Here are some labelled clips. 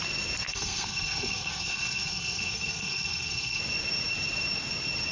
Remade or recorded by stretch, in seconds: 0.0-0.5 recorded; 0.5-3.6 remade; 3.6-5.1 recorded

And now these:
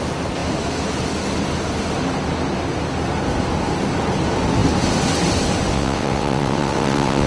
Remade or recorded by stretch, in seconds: 0.0-5.7 recorded; 5.7-7.3 remade

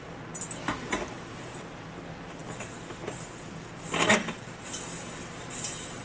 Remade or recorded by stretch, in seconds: 0.0-6.0 recorded

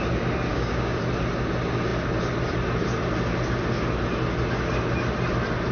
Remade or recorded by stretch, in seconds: 0.0-0.5 recorded; 0.5-1.0 remade; 1.0-5.7 recorded